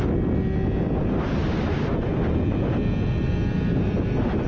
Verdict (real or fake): real